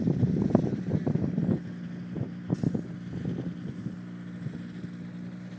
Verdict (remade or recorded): recorded